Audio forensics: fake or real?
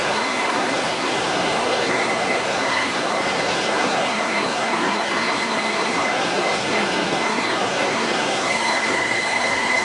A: fake